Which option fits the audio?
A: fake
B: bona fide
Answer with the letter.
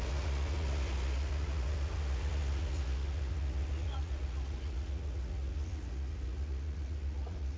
A